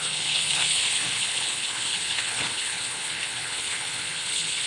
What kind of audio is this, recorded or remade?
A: remade